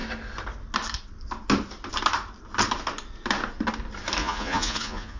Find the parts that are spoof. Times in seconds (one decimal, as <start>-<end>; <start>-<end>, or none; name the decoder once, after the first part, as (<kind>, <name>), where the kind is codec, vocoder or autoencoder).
4.2-5.2 (vocoder, Vocos)